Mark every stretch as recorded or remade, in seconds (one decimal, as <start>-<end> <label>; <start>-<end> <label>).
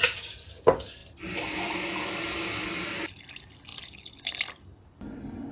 0.0-5.5 recorded